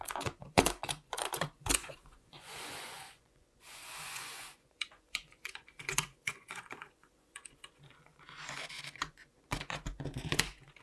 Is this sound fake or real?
fake